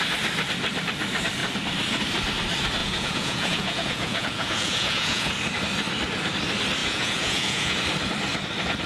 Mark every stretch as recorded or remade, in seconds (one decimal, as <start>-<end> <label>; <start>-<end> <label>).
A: 0.0-2.8 recorded; 2.8-5.3 remade; 5.3-6.8 recorded; 6.8-7.8 remade; 7.8-8.9 recorded